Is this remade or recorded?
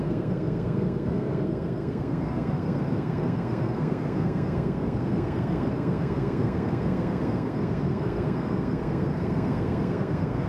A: remade